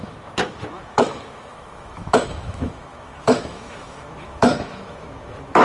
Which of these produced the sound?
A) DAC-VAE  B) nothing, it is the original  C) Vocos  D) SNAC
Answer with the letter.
A